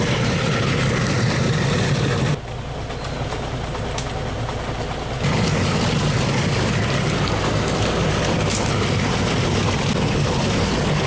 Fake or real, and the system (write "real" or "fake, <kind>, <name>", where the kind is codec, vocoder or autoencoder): real